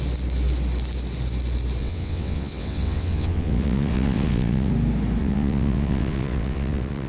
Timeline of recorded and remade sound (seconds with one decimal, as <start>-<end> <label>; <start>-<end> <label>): 0.0-1.8 recorded; 1.8-4.7 remade; 4.7-5.2 recorded; 5.2-7.1 remade